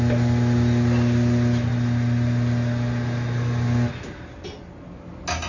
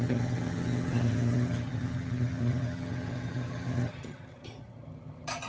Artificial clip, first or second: second